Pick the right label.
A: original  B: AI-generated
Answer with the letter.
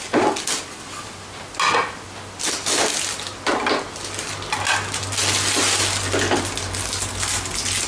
A